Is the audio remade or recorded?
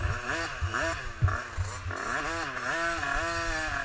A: recorded